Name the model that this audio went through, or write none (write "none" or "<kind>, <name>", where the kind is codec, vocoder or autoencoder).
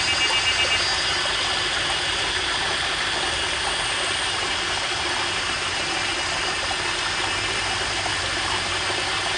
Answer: none